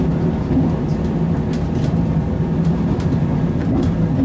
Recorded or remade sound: recorded